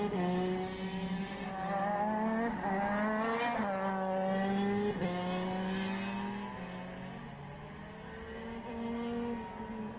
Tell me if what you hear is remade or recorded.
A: recorded